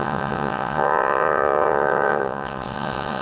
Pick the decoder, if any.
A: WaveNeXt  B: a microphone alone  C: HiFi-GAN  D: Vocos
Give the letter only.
A